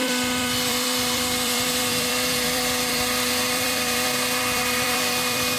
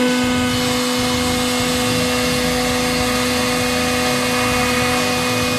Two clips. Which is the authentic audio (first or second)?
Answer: second